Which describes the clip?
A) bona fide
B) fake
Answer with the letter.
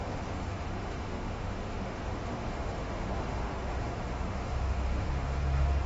B